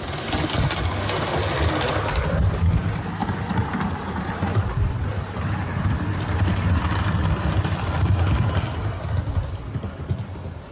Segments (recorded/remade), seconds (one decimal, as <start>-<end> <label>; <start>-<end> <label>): 0.0-3.2 recorded; 3.2-5.9 remade; 5.9-10.7 recorded